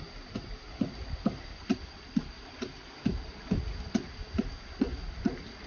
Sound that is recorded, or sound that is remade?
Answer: recorded